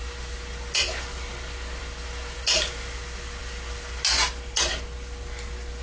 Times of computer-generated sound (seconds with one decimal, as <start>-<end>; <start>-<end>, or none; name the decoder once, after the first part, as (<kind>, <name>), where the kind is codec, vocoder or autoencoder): none